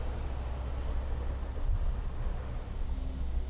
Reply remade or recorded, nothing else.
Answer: recorded